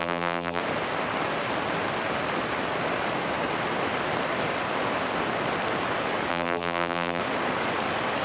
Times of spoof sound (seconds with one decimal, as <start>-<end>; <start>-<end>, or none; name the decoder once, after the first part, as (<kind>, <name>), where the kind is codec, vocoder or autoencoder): 0.0-0.6 (vocoder, BigVGAN v2); 6.3-7.2